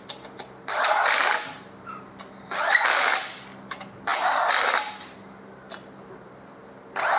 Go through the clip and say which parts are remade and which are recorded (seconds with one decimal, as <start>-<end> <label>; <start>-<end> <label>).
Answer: 0.0-7.2 recorded